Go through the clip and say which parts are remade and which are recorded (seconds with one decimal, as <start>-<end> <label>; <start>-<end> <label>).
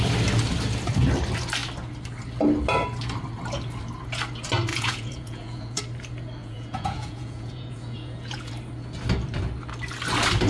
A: 0.0-4.7 recorded; 4.7-5.8 remade; 5.8-6.4 recorded; 6.4-8.5 remade; 8.5-10.5 recorded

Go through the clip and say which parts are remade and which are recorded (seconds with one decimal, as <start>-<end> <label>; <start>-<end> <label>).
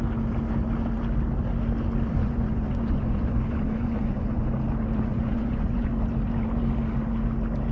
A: 0.0-2.2 recorded; 2.2-4.5 remade; 4.5-5.1 recorded; 5.1-5.9 remade; 5.9-7.7 recorded